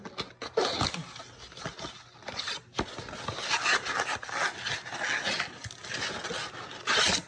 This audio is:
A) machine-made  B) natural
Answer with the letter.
B